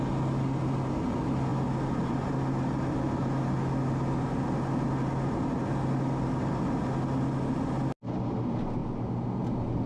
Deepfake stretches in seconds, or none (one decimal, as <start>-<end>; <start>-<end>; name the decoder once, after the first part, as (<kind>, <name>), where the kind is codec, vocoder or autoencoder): none